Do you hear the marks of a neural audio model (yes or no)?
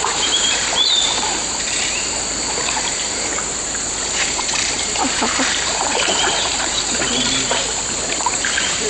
yes